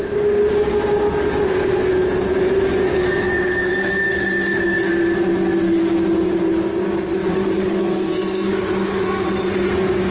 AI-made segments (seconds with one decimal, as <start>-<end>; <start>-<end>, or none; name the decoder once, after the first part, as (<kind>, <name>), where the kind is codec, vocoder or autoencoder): 2.9-4.9 (codec, DAC); 7.2-9.2